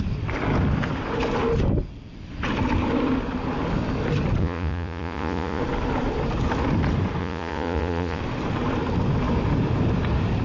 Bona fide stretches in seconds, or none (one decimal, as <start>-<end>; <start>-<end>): 0.0-4.4; 5.6-7.2; 8.2-10.4